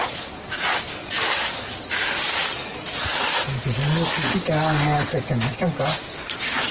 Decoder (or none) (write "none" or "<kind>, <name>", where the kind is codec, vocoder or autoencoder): none